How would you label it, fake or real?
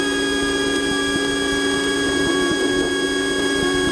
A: real